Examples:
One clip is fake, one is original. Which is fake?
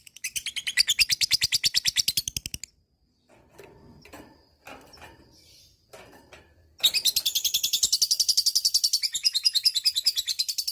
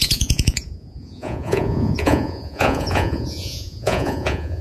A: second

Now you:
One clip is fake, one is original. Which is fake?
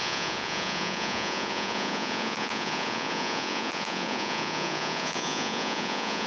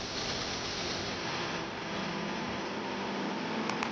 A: first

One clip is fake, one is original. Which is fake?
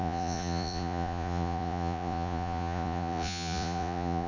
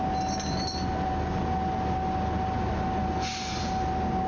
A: first